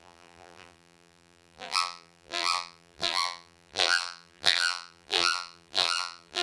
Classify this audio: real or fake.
fake